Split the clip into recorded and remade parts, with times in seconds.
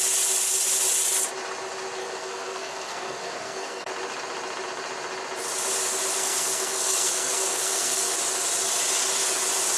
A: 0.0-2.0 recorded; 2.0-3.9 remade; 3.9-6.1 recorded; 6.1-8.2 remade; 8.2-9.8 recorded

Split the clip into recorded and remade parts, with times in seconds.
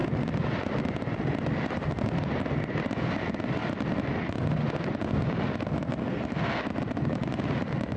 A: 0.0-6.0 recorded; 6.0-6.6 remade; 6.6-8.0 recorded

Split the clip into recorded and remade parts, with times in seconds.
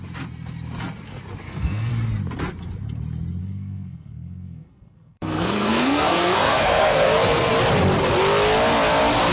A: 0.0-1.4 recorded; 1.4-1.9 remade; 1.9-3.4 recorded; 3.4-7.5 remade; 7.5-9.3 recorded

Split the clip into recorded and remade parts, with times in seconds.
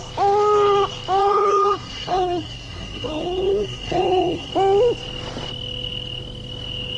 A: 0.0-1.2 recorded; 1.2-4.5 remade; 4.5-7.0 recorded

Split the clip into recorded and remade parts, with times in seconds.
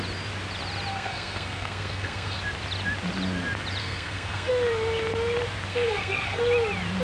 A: 0.0-0.9 recorded; 0.9-2.4 remade; 2.4-3.8 recorded; 3.8-4.5 remade; 4.5-5.7 recorded; 5.7-6.4 remade; 6.4-7.0 recorded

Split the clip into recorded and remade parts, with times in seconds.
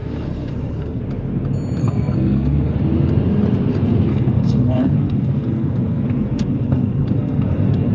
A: 0.0-1.0 remade; 1.0-1.8 recorded; 1.8-2.8 remade; 2.8-4.1 recorded; 4.1-7.9 remade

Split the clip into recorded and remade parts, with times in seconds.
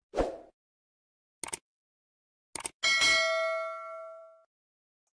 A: 0.0-5.2 recorded